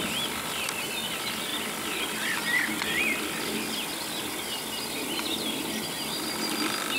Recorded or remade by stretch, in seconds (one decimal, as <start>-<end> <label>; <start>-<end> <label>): 0.0-7.0 recorded